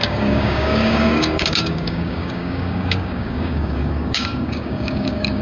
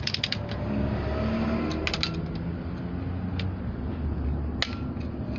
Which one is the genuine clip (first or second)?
second